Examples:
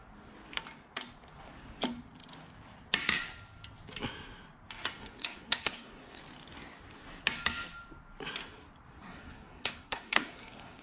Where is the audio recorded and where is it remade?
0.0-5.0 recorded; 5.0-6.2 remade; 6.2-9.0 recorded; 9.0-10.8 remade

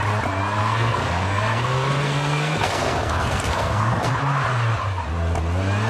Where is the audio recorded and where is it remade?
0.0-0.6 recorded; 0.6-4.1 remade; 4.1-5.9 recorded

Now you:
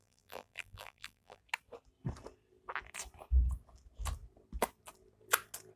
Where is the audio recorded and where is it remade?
0.0-1.4 remade; 1.4-5.8 recorded

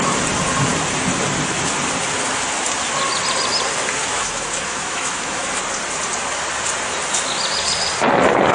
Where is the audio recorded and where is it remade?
0.0-4.0 recorded; 4.0-5.6 remade; 5.6-8.5 recorded

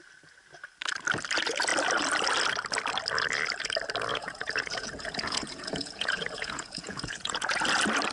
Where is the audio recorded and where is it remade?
0.0-4.1 recorded; 4.1-7.6 remade; 7.6-8.1 recorded

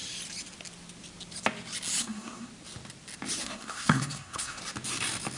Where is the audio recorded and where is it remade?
0.0-2.0 recorded; 2.0-2.5 remade; 2.5-3.4 recorded; 3.4-4.6 remade; 4.6-5.4 recorded

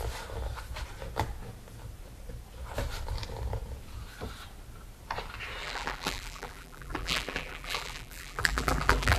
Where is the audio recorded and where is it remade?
0.0-5.6 recorded; 5.6-9.2 remade